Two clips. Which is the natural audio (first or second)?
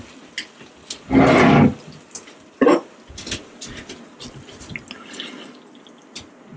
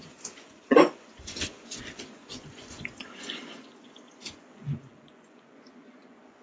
first